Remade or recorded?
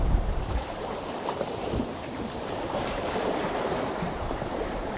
remade